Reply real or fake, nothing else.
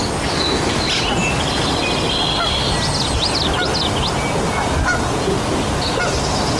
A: real